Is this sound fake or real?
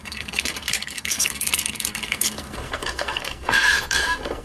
fake